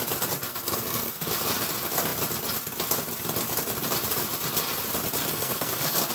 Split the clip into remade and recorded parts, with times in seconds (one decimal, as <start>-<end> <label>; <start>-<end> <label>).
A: 0.0-0.5 recorded; 0.5-1.3 remade; 1.3-5.2 recorded; 5.2-6.1 remade